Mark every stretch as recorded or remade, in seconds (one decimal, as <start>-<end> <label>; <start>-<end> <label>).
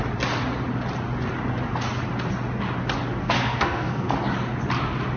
0.0-3.2 recorded; 3.2-4.1 remade; 4.1-5.2 recorded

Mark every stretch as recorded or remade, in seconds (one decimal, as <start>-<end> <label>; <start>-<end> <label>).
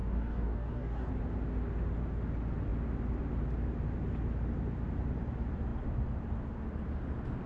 0.0-1.1 remade; 1.1-7.5 recorded